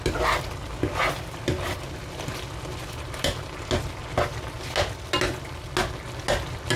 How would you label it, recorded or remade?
recorded